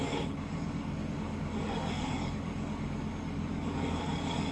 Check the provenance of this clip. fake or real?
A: fake